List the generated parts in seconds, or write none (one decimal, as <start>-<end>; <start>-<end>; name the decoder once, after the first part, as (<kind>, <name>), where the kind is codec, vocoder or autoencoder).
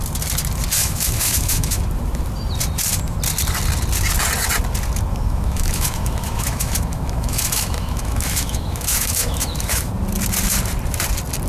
0.8-1.8 (autoencoder, DAC-VAE); 5.1-9.9